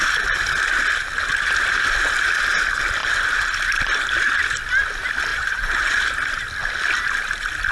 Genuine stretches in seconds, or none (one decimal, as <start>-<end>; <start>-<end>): 0.0-5.3; 6.0-7.7